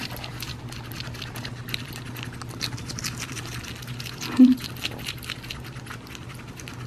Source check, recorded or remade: recorded